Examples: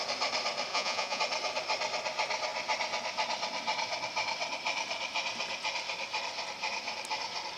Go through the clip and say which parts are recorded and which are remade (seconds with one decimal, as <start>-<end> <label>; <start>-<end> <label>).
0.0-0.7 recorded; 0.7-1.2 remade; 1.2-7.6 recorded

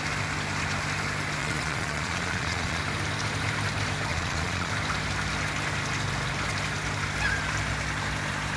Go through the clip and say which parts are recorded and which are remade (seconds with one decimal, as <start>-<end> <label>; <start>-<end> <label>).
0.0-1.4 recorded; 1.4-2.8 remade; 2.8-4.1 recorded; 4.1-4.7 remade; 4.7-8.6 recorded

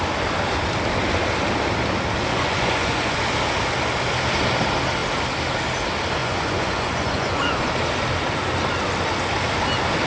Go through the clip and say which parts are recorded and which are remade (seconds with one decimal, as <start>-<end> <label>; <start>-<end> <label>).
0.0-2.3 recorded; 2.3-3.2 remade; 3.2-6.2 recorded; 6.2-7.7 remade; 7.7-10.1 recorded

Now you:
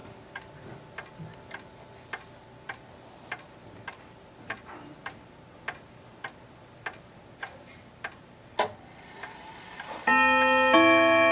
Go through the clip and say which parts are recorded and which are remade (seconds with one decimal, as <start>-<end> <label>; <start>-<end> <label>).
0.0-11.3 recorded